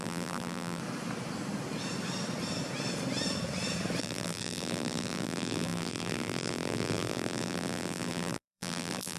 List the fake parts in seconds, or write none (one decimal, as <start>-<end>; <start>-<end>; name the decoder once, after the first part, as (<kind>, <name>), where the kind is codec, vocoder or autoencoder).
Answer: 0.0-0.8 (vocoder, BigVGAN v2); 4.0-9.2